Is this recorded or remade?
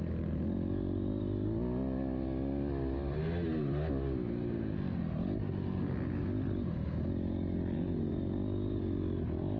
recorded